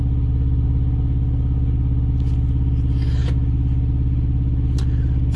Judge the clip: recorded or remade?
recorded